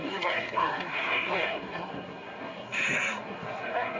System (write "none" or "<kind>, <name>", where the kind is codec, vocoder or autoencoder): codec, SNAC